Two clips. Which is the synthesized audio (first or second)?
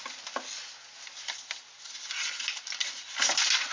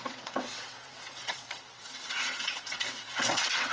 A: second